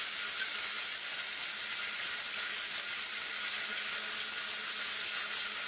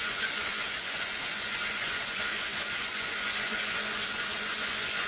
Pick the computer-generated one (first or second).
second